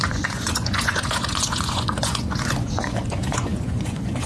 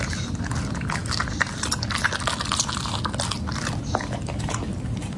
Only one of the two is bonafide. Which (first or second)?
second